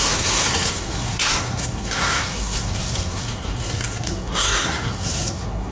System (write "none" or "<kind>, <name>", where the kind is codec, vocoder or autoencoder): codec, SNAC